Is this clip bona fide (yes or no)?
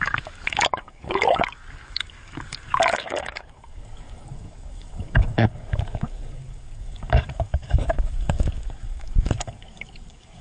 no